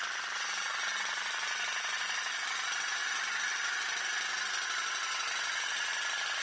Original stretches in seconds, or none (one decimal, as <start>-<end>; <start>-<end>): 0.0-6.4